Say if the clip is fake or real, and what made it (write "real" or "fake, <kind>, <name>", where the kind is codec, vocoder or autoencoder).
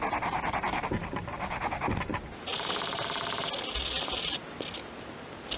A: real